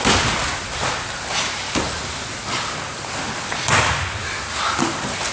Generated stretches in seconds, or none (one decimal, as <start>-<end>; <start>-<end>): none